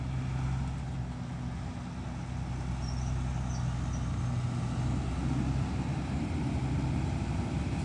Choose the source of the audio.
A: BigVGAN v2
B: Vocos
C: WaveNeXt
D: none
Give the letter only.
D